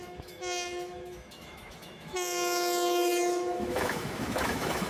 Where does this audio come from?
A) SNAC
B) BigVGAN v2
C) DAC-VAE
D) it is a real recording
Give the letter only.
C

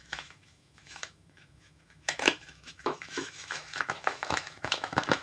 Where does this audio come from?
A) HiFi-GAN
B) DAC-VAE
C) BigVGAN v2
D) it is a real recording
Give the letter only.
B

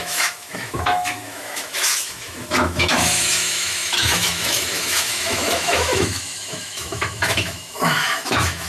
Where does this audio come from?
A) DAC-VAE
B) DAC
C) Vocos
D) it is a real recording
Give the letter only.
A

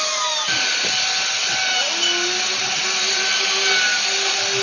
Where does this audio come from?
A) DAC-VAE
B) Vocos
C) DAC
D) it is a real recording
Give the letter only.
D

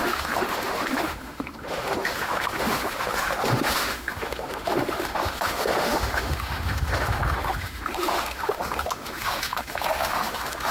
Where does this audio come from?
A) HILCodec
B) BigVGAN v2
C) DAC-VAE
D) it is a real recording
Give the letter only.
C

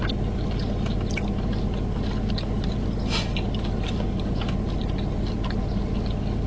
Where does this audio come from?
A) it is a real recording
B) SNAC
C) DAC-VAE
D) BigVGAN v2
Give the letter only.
A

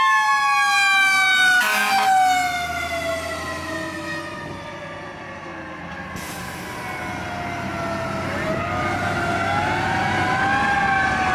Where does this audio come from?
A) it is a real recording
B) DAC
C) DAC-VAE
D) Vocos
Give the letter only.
A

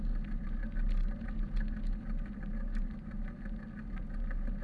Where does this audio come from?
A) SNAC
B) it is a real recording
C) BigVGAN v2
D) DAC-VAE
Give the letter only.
B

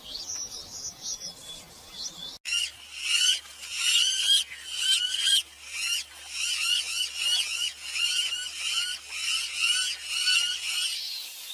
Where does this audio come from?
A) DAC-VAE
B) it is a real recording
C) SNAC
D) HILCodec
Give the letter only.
B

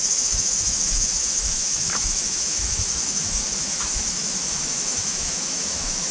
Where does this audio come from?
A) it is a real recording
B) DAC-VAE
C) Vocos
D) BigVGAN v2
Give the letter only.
B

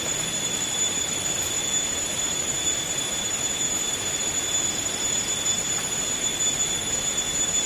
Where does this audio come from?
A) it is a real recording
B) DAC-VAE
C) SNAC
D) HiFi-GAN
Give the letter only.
A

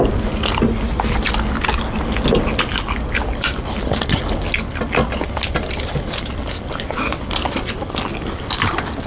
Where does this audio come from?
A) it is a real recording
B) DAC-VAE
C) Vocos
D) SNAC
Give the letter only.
A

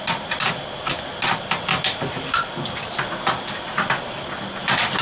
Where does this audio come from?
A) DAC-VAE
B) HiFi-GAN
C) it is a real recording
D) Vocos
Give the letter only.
C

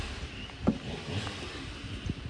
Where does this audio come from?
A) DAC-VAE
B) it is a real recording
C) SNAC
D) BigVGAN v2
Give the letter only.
B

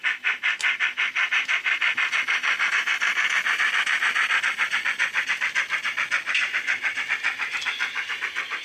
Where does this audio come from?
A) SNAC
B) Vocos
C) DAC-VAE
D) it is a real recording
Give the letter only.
D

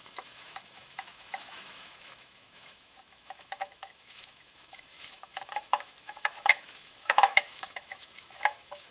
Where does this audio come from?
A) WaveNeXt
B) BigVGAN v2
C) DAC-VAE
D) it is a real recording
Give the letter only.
C